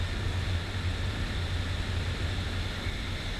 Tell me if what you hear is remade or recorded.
recorded